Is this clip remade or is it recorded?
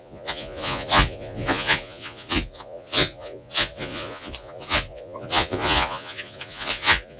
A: remade